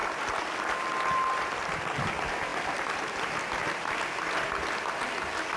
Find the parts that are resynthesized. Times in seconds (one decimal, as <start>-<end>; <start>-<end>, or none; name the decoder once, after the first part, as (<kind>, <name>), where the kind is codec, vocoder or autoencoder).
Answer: none